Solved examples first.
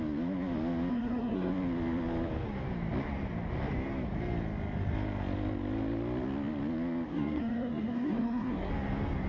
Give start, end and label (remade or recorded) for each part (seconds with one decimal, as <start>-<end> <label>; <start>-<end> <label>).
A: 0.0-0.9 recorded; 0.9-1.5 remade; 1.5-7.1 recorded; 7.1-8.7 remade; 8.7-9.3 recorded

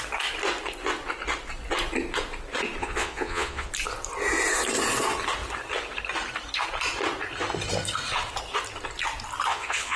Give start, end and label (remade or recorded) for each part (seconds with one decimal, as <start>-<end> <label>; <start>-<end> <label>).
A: 0.0-2.8 recorded; 2.8-3.7 remade; 3.7-9.5 recorded; 9.5-10.0 remade

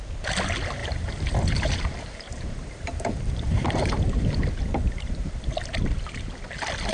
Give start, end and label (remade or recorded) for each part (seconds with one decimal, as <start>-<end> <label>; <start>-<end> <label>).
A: 0.0-0.8 recorded; 0.8-4.1 remade; 4.1-4.8 recorded; 4.8-5.5 remade; 5.5-6.9 recorded

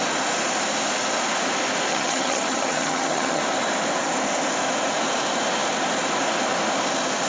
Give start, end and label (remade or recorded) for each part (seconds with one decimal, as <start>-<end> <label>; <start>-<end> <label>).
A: 0.0-1.9 recorded; 1.9-3.4 remade; 3.4-7.3 recorded

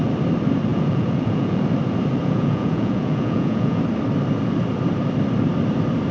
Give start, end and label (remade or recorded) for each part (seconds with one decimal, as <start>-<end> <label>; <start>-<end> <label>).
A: 0.0-0.7 recorded; 0.7-1.6 remade; 1.6-2.2 recorded; 2.2-3.8 remade; 3.8-6.1 recorded